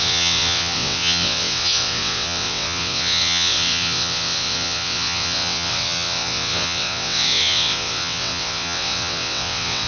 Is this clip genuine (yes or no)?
no